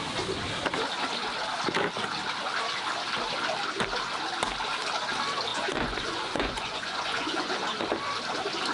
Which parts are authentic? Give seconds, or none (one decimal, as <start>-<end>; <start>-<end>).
0.0-5.5; 7.5-8.7

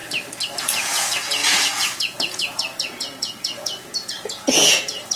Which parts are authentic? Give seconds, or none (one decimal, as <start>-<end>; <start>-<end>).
0.0-0.6